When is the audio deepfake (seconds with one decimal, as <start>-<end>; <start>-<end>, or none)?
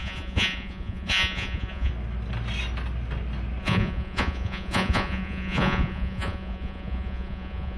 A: 0.0-1.9; 3.6-7.8